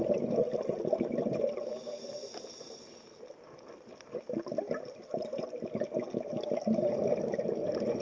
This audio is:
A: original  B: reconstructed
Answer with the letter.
A